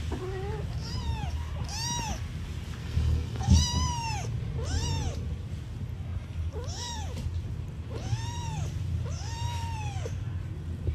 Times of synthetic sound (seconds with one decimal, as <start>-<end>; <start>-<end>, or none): 2.8-3.6